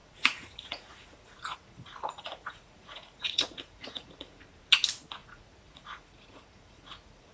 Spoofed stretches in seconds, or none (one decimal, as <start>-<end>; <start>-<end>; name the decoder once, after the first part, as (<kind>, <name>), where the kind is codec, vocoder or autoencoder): 0.0-4.4 (vocoder, Vocos); 5.2-7.3